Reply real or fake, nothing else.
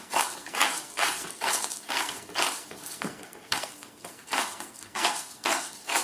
fake